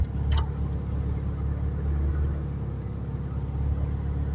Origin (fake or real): real